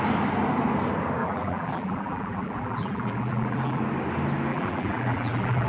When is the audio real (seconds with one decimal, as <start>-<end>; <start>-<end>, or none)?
0.0-1.2; 3.8-4.5